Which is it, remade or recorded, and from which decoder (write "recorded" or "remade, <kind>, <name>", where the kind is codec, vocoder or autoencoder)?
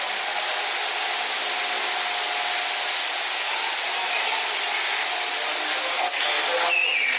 recorded